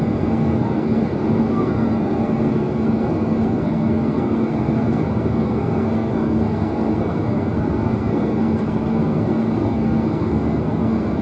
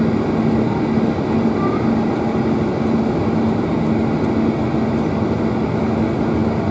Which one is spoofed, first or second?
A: first